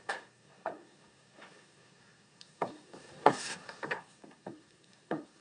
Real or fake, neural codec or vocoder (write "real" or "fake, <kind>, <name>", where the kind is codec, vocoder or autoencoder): fake, codec, SNAC